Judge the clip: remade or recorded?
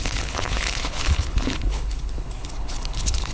remade